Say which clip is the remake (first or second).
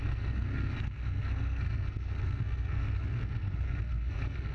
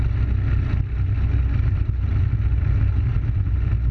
first